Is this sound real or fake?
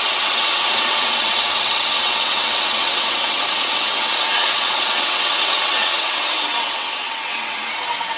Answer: fake